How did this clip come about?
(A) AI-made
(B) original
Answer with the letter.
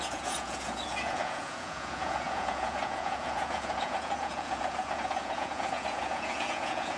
A